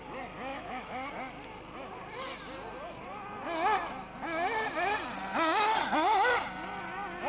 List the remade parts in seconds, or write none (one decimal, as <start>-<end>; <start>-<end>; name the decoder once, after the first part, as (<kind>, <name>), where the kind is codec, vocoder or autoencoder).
0.5-1.1 (autoencoder, DAC-VAE)